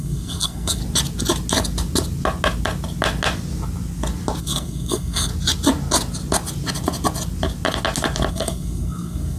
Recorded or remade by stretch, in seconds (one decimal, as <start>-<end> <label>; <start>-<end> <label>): 0.0-0.8 remade; 0.8-4.4 recorded; 4.4-5.3 remade; 5.3-8.3 recorded; 8.3-9.4 remade